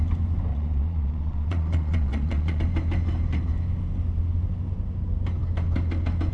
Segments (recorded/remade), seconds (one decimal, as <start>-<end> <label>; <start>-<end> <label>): 0.0-0.5 recorded; 0.5-2.6 remade; 2.6-6.3 recorded